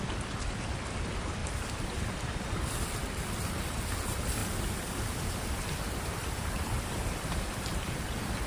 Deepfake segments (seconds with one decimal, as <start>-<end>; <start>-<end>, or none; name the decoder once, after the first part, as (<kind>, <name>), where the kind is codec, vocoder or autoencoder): 1.4-3.5 (vocoder, BigVGAN v2); 4.4-7.9